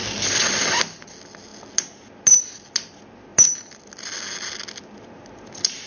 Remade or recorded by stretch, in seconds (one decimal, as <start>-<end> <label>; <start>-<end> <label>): 0.0-5.9 recorded